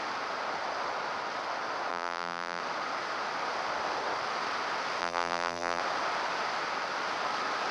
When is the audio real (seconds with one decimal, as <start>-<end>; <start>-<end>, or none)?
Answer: 0.0-1.9; 2.6-5.0; 5.8-7.7